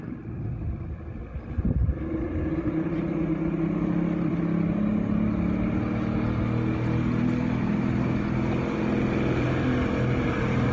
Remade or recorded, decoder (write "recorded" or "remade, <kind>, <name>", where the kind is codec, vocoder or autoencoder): recorded